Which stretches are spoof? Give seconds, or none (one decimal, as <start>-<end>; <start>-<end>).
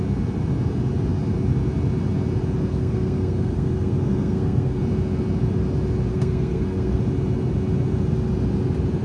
2.7-4.8; 6.1-7.0